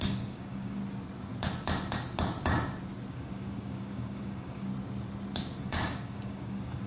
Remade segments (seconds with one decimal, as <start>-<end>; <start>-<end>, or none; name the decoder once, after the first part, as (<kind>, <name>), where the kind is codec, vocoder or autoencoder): 0.0-0.8 (codec, DAC); 3.1-4.7; 5.6-6.9